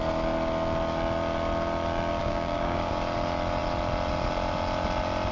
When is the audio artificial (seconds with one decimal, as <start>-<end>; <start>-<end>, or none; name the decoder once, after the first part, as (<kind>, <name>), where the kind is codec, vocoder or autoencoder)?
2.2-2.9 (codec, DAC)

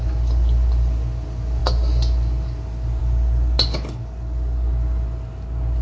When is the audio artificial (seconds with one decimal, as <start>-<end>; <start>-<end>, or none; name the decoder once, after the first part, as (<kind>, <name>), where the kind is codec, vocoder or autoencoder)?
none

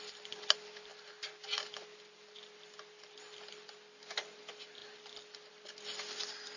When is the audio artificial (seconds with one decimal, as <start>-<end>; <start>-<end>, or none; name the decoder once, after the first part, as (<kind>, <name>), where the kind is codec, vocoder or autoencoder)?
none

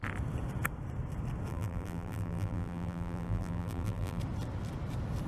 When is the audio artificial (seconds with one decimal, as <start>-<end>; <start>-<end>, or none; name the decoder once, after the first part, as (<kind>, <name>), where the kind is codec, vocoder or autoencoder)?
1.5-4.2 (vocoder, BigVGAN v2)

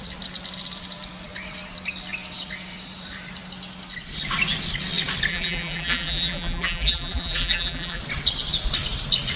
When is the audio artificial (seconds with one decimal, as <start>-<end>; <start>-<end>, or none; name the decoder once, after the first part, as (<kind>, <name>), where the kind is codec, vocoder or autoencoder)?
5.3-8.0 (vocoder, BigVGAN v2)

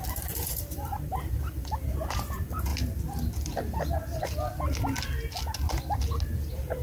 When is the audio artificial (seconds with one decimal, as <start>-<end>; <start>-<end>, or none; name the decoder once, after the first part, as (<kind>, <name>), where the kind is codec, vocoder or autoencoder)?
0.0-2.7 (vocoder, BigVGAN v2); 6.2-6.8